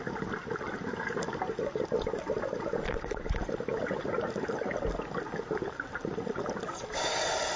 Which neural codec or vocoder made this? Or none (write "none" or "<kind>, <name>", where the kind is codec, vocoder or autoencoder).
none